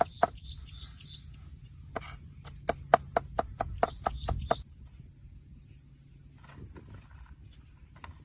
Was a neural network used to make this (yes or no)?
no